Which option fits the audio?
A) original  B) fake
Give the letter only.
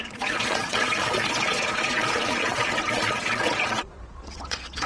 B